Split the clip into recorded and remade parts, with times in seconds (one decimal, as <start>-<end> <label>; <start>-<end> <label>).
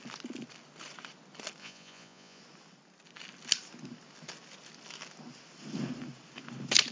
0.0-1.6 recorded; 1.6-2.4 remade; 2.4-6.9 recorded